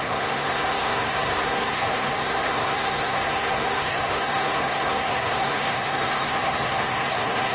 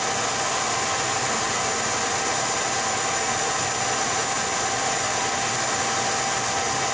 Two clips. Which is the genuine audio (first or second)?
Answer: second